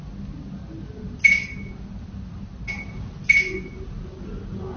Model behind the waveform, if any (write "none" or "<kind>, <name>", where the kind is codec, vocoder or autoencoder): none